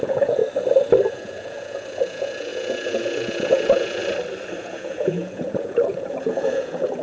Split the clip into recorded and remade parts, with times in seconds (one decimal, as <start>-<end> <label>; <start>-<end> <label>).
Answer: 0.0-0.4 remade; 0.4-1.1 recorded; 1.1-4.0 remade; 4.0-4.6 recorded; 4.6-7.0 remade

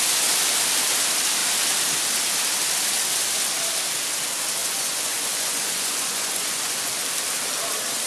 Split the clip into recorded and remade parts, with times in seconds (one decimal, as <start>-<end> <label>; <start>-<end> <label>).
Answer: 0.0-4.6 recorded; 4.6-7.0 remade; 7.0-8.1 recorded

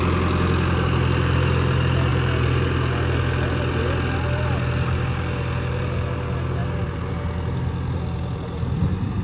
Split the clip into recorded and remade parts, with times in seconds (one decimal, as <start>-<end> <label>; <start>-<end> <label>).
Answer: 0.0-9.2 recorded